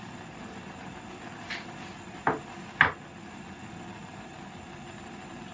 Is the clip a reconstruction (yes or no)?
no